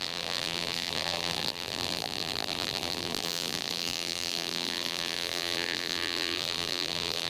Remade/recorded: remade